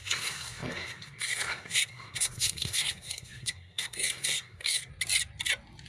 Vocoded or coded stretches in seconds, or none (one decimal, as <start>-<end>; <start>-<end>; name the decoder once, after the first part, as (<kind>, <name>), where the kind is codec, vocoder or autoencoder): 0.0-4.9 (codec, SNAC)